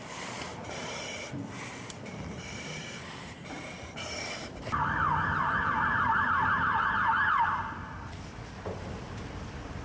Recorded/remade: remade